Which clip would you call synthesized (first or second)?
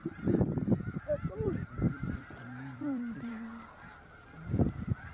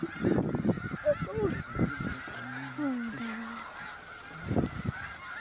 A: first